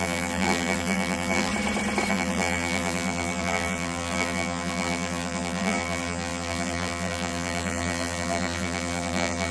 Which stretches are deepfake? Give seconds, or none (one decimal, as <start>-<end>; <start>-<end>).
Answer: 0.0-1.5; 2.1-9.5